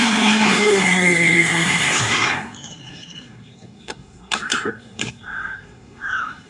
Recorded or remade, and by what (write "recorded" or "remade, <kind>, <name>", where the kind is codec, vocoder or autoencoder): remade, codec, SNAC